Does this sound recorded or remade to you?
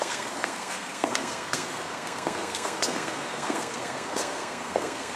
remade